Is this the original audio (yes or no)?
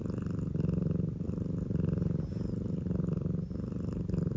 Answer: yes